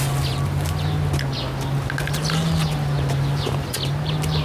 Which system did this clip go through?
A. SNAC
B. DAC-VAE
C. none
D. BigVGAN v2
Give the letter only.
C